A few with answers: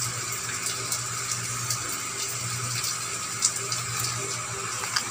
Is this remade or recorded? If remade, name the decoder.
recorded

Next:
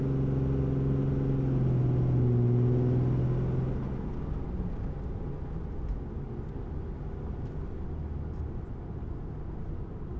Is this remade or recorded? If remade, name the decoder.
recorded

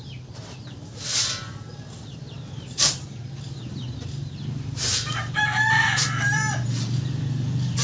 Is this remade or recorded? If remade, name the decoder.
remade, vocoder, BigVGAN v2